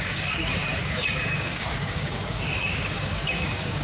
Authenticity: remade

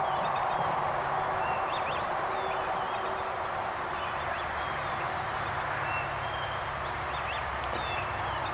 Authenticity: recorded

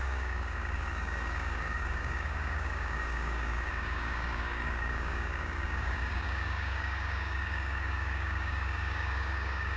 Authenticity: remade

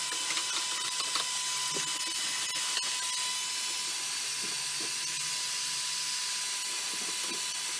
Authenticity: recorded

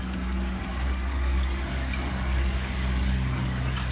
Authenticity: remade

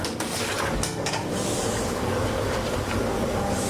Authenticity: remade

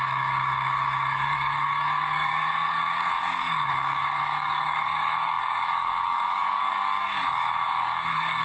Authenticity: remade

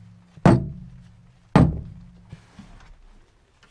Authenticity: recorded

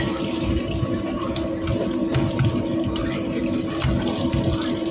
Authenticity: recorded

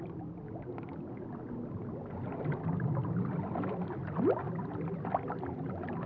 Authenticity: recorded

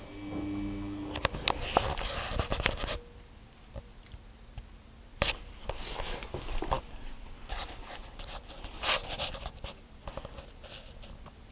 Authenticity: recorded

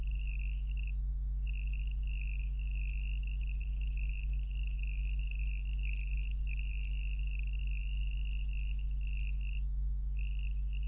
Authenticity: recorded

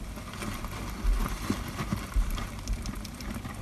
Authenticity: recorded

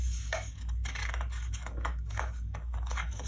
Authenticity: remade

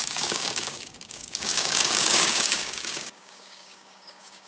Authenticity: remade